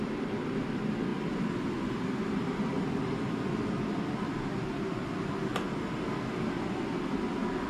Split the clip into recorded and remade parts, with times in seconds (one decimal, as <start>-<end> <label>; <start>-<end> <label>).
0.0-7.7 recorded